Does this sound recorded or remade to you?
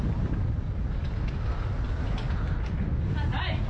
recorded